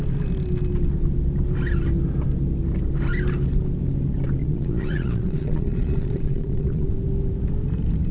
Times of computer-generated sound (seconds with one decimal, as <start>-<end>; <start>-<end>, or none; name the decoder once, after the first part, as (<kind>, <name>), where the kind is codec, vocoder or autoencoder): 4.4-6.9 (vocoder, Vocos)